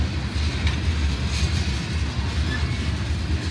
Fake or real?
real